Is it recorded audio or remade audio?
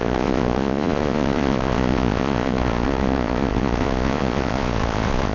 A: remade